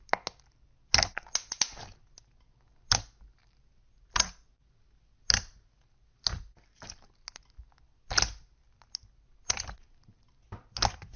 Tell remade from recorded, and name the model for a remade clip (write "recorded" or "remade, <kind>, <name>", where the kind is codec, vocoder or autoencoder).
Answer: recorded